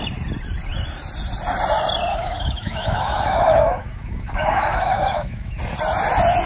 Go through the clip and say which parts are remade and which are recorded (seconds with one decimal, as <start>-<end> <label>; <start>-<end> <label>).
0.0-2.1 recorded; 2.1-5.6 remade; 5.6-6.5 recorded